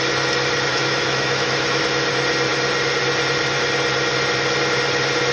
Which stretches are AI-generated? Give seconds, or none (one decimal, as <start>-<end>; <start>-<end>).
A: 0.7-1.8